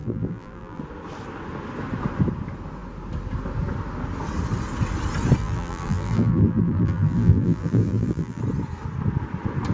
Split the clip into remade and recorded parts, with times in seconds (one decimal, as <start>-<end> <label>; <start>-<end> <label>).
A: 0.0-0.8 remade; 0.8-5.4 recorded; 5.4-8.4 remade; 8.4-9.7 recorded